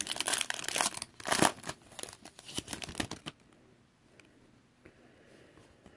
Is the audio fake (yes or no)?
no